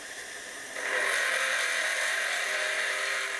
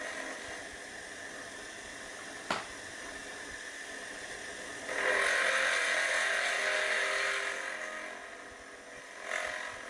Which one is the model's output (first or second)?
first